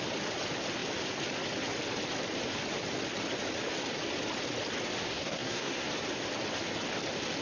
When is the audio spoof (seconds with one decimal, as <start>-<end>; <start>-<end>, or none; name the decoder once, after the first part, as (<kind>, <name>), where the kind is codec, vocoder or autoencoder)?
5.1-5.9 (codec, SNAC)

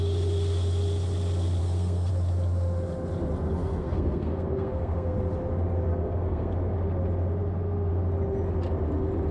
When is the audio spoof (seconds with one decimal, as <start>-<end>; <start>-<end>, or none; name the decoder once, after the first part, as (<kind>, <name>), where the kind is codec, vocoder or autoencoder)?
1.6-2.1 (codec, SNAC); 3.6-5.2; 5.9-6.5

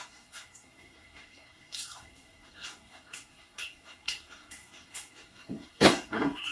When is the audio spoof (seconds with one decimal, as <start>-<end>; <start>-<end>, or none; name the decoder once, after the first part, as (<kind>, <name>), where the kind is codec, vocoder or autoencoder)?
0.0-6.5 (codec, SNAC)

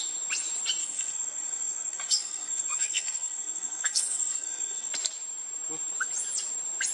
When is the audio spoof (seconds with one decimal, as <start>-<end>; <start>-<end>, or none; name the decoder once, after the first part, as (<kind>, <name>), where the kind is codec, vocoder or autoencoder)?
0.8-4.9 (codec, SNAC)

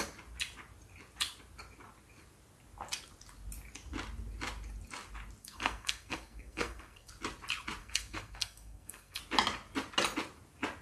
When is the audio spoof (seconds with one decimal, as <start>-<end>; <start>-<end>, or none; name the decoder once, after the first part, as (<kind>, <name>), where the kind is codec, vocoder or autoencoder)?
5.4-7.1 (codec, SNAC); 7.8-9.2